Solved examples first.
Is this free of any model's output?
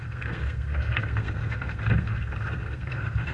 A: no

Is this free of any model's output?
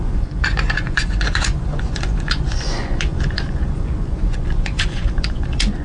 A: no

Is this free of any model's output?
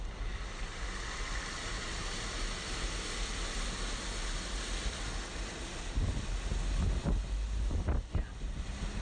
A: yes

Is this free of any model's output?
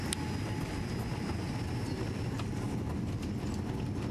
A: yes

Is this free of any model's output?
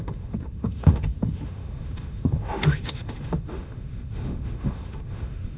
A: no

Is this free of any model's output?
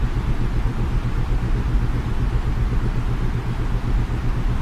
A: yes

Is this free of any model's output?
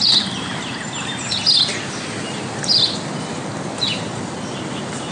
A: yes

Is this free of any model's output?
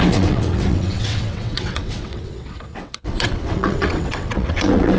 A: no